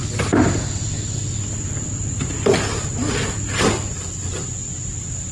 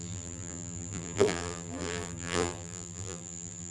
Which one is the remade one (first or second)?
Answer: second